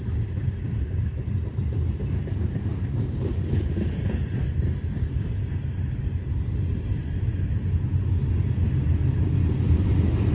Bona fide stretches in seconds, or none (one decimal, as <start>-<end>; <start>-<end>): 7.3-8.5; 9.0-9.5